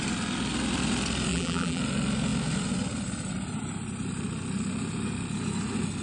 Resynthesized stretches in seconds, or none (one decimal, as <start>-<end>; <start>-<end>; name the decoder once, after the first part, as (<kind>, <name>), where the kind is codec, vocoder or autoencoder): 1.3-1.8 (vocoder, BigVGAN v2)